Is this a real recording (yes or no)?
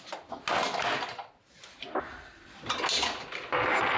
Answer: yes